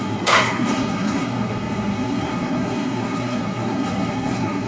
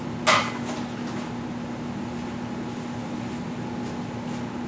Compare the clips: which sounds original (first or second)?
second